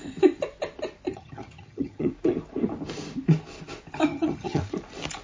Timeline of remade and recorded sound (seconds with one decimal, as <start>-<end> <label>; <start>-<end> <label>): 0.0-1.1 recorded; 1.1-2.1 remade; 2.1-4.1 recorded; 4.1-4.6 remade; 4.6-5.2 recorded

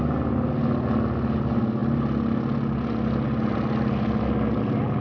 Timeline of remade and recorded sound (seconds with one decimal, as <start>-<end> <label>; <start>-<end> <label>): 0.0-5.0 recorded

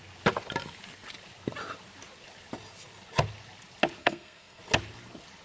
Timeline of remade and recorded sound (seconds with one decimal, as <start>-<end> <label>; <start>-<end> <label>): 0.0-4.0 recorded; 4.0-4.6 remade; 4.6-5.4 recorded

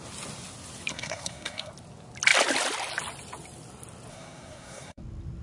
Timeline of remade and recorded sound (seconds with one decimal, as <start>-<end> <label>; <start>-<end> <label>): 0.0-0.9 recorded; 0.9-1.7 remade; 1.7-4.1 recorded; 4.1-5.0 remade; 5.0-5.4 recorded

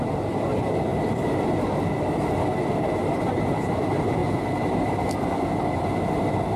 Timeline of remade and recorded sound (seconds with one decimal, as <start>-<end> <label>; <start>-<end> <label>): 0.0-0.9 remade; 0.9-2.5 recorded; 2.5-4.2 remade; 4.2-5.8 recorded; 5.8-6.6 remade

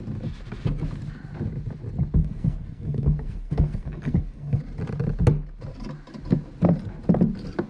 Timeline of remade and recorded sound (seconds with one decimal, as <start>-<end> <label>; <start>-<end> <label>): 0.0-2.2 recorded; 2.2-4.6 remade; 4.6-7.7 recorded

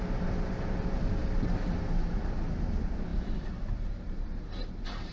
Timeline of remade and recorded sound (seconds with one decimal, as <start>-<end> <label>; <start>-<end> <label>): 0.0-5.1 recorded